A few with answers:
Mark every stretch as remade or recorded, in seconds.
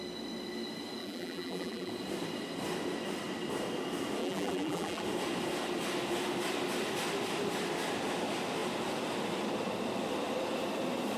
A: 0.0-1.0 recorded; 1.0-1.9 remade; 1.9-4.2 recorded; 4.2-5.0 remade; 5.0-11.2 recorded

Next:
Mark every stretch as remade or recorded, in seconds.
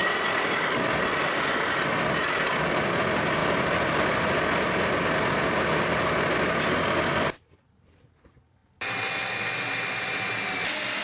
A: 0.0-11.0 recorded